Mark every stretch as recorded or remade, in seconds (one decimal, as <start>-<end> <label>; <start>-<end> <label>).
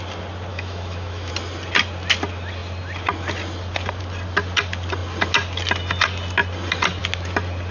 0.0-0.5 recorded; 0.5-1.3 remade; 1.3-7.7 recorded